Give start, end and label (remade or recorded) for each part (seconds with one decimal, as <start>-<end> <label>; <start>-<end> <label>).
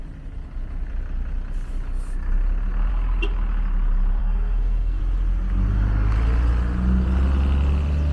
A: 0.0-4.2 recorded; 4.2-5.0 remade; 5.0-8.1 recorded